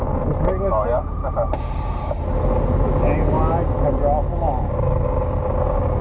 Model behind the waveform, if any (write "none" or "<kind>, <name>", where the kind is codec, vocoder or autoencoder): none